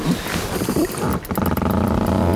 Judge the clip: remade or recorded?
recorded